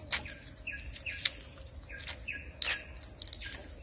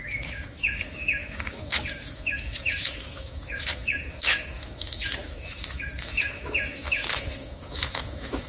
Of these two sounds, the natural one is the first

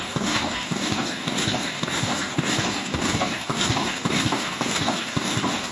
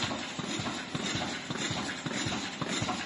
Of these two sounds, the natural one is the second